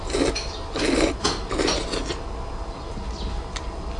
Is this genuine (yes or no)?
yes